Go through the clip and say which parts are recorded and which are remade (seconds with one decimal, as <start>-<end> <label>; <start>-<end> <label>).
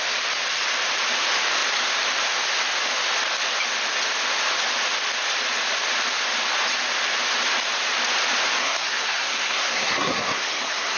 0.0-8.6 recorded; 8.6-11.0 remade